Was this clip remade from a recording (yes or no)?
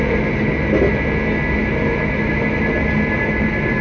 no